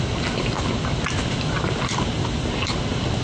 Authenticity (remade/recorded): recorded